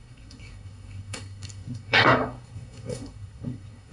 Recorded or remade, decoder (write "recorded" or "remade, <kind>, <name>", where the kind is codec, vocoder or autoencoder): remade, codec, SNAC